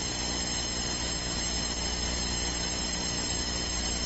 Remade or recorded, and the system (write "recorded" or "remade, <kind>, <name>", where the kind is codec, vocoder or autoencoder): recorded